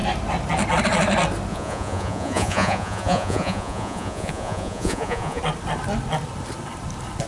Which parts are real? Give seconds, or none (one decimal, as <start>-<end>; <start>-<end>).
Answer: 0.0-1.5; 5.4-7.3